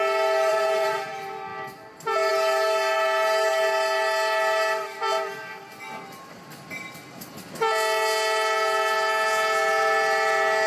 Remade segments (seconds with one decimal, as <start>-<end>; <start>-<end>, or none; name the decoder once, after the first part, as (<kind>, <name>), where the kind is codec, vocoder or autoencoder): 0.5-1.1 (vocoder, Vocos)